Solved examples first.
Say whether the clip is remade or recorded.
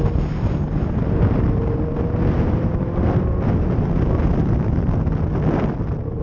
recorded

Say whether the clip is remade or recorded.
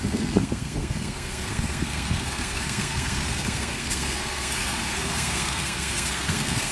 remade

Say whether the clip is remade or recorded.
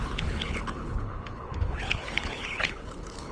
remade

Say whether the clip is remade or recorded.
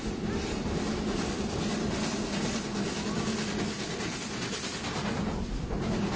recorded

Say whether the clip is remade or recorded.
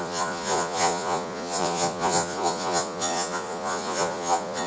remade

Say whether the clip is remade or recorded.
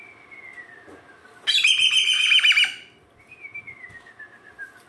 recorded